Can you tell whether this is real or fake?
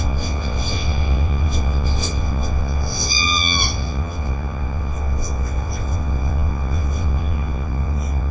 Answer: fake